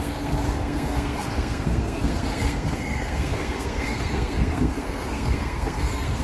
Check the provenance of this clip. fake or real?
fake